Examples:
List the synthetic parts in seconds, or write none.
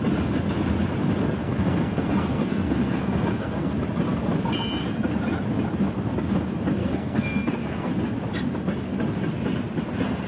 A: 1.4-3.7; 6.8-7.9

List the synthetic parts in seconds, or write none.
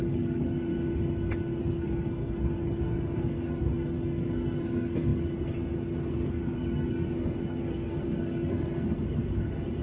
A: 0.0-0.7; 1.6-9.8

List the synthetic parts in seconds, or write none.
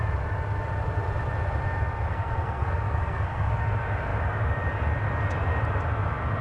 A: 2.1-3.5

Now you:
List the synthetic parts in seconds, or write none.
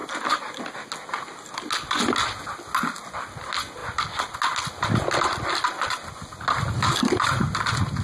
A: none